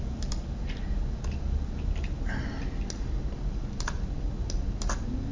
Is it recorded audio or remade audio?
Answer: recorded